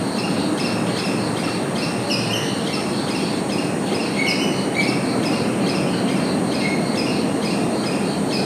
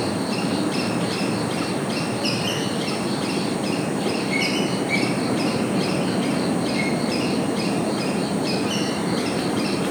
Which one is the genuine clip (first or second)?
first